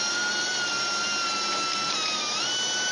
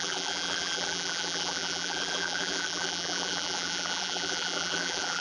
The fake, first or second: second